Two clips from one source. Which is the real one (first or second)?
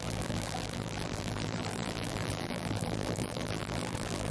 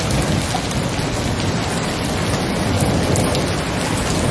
second